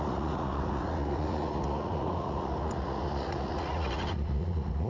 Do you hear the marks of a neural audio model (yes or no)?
yes